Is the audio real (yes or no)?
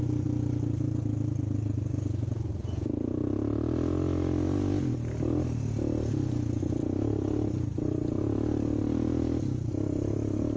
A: yes